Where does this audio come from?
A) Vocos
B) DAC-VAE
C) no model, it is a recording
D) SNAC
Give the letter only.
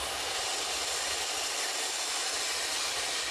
C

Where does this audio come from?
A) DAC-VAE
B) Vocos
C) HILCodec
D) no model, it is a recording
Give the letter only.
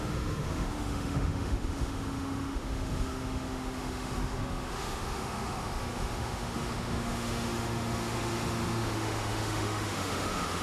A